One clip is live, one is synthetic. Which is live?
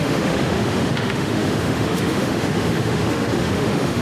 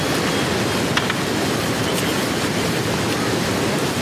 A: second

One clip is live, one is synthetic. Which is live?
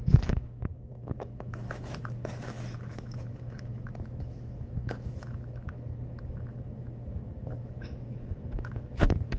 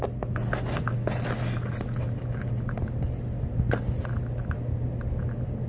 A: second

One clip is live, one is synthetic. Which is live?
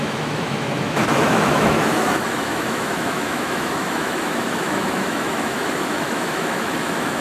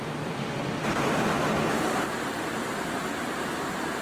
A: second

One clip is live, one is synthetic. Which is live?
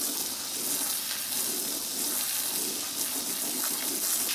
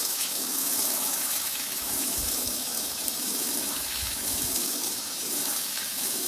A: first